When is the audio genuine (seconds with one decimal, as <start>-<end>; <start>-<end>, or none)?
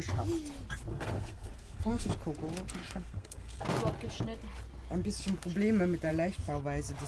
0.0-0.9; 2.1-2.8; 3.6-7.1